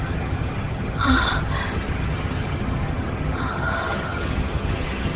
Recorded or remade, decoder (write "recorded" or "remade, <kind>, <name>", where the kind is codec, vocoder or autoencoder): remade, vocoder, HiFi-GAN